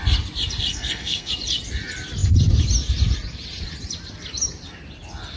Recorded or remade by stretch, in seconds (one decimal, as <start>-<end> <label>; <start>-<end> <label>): 0.0-0.7 recorded; 0.7-1.3 remade; 1.3-5.4 recorded